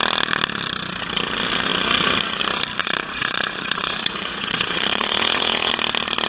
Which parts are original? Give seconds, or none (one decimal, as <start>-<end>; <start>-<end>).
0.0-2.8; 5.7-6.3